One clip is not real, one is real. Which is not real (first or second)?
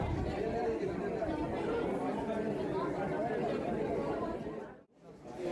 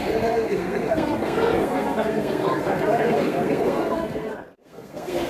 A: second